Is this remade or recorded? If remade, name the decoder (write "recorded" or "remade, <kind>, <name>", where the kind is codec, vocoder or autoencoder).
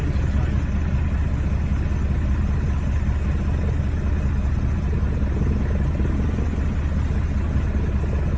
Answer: recorded